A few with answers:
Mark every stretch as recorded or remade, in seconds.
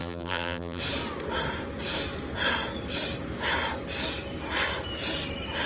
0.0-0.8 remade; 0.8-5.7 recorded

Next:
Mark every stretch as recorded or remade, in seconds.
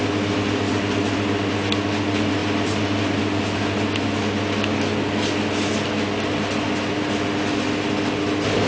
0.0-2.4 recorded; 2.4-3.0 remade; 3.0-8.7 recorded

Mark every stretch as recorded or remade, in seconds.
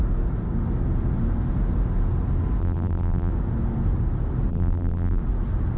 0.0-2.6 recorded; 2.6-3.3 remade; 3.3-4.5 recorded; 4.5-5.2 remade; 5.2-5.8 recorded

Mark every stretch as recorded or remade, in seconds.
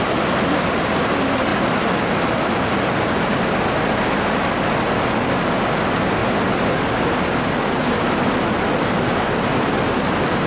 0.0-10.5 recorded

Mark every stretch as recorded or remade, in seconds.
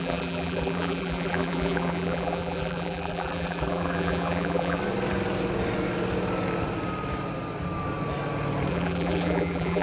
0.0-4.8 remade; 4.8-8.7 recorded; 8.7-9.8 remade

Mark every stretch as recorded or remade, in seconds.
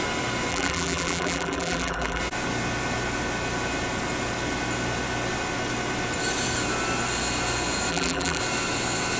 0.0-0.5 recorded; 0.5-2.2 remade; 2.2-7.9 recorded; 7.9-8.4 remade; 8.4-9.2 recorded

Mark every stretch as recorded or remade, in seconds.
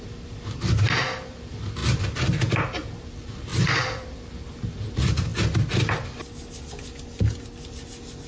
0.0-3.5 recorded; 3.5-4.1 remade; 4.1-8.3 recorded